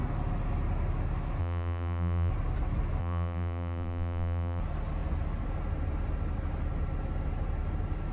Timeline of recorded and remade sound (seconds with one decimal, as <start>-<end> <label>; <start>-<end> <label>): 0.0-1.4 recorded; 1.4-2.3 remade; 2.3-3.0 recorded; 3.0-4.6 remade; 4.6-8.1 recorded